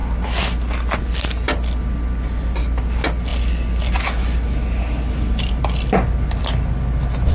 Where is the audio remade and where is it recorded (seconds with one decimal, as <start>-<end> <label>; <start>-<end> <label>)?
0.0-7.3 recorded